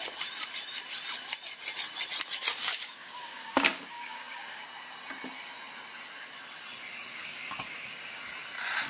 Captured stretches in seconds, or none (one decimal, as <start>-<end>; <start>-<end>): 0.0-2.5; 4.6-7.1; 8.2-8.9